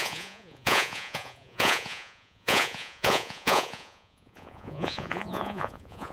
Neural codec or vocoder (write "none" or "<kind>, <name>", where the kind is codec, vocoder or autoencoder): vocoder, Vocos